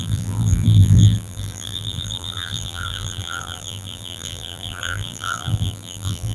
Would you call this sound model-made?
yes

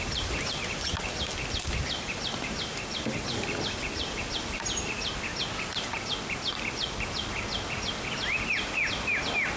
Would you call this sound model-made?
no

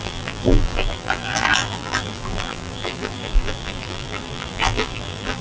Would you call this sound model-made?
yes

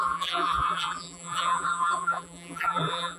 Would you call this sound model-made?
yes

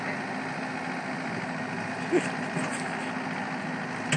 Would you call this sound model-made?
no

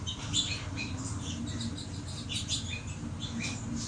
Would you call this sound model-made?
no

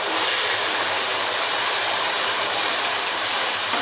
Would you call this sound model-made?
yes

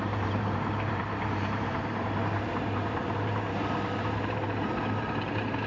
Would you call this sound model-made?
yes